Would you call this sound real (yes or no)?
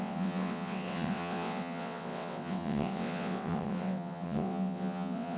no